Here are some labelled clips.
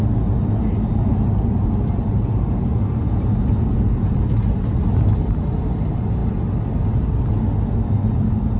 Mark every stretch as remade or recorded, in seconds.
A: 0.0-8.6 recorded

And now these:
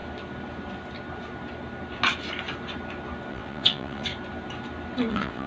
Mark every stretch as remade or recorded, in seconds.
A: 0.0-3.3 recorded; 3.3-4.1 remade; 4.1-5.1 recorded; 5.1-5.5 remade

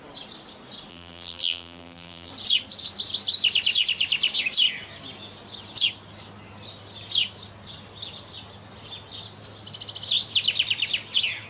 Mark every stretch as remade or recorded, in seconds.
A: 0.0-0.9 recorded; 0.9-2.3 remade; 2.3-11.5 recorded

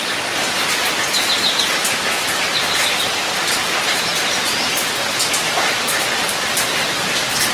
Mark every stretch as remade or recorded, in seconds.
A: 0.0-7.5 remade

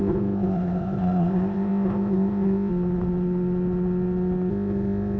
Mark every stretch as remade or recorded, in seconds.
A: 0.0-2.7 remade; 2.7-4.5 recorded; 4.5-5.2 remade

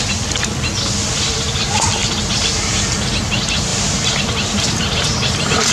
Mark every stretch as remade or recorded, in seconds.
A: 0.0-3.7 recorded; 3.7-5.7 remade